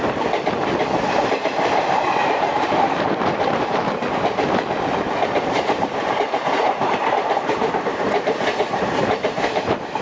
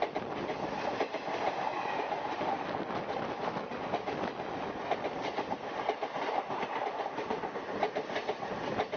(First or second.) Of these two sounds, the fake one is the first